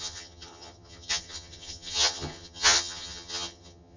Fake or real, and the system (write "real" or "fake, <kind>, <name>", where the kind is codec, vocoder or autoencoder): fake, vocoder, HiFi-GAN